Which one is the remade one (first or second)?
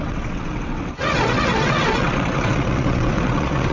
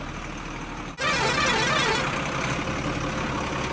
first